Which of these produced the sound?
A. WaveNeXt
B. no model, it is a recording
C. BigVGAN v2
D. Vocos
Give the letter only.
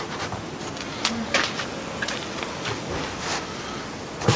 B